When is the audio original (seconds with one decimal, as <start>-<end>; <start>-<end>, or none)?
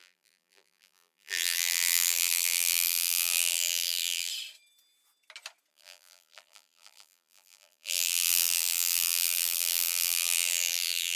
4.3-5.7